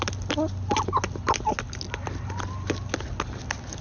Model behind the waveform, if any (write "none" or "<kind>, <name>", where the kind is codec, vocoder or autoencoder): none